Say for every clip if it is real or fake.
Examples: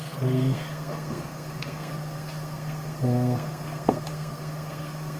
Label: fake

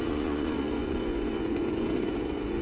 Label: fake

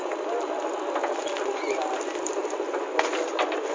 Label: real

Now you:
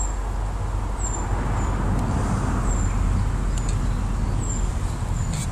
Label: real